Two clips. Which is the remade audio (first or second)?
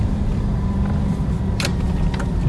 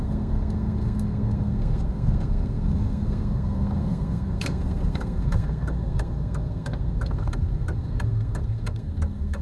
second